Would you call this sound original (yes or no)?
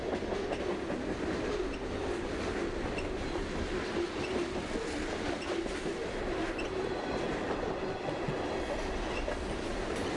yes